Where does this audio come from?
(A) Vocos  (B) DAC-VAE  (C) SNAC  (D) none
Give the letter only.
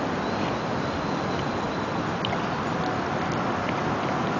D